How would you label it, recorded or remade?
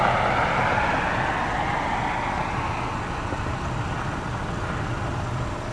recorded